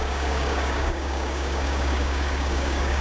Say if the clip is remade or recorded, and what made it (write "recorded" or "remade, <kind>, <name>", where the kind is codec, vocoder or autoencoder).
remade, codec, DAC